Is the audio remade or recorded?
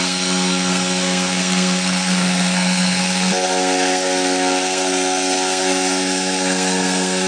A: remade